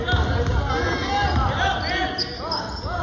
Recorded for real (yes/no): yes